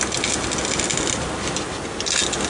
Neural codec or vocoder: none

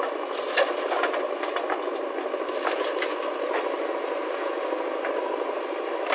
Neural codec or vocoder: none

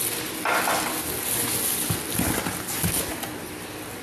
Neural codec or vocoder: none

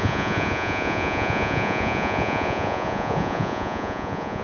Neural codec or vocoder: vocoder, Vocos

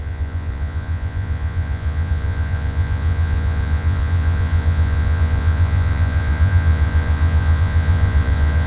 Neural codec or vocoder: vocoder, Vocos